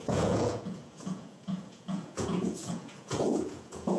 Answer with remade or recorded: remade